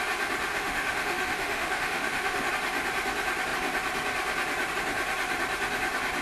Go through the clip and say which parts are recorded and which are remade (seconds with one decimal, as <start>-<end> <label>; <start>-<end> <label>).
0.0-0.5 recorded; 0.5-2.5 remade; 2.5-6.2 recorded